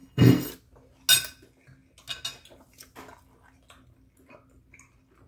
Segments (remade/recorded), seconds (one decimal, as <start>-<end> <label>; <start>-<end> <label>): 0.0-0.5 remade; 0.5-5.3 recorded